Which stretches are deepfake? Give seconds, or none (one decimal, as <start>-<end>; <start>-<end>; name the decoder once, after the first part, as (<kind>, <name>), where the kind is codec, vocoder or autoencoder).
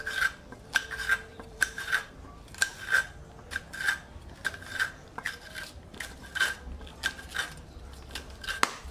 1.3-2.1 (vocoder, BigVGAN v2)